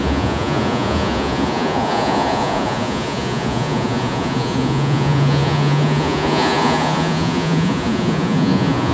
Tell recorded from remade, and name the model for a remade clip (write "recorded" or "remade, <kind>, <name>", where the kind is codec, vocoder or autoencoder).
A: remade, vocoder, Vocos